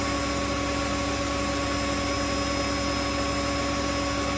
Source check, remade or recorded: recorded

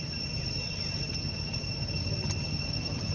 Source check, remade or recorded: recorded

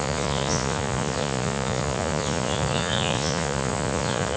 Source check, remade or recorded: remade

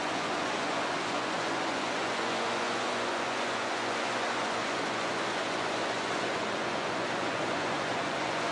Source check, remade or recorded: remade